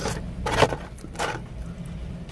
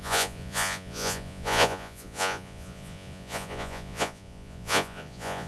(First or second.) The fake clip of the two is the second